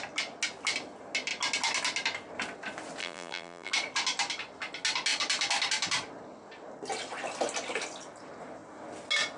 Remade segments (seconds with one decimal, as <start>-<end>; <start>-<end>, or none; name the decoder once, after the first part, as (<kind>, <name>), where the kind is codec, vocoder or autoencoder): 3.0-3.7 (vocoder, BigVGAN v2)